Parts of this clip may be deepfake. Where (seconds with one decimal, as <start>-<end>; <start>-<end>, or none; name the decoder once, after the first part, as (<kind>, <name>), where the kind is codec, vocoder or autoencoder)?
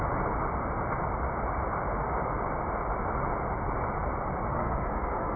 4.5-5.4 (codec, SNAC)